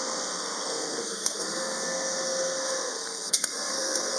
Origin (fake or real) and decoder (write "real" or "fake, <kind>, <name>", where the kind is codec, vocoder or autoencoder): fake, codec, SNAC